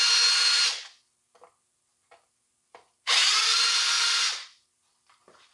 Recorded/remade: recorded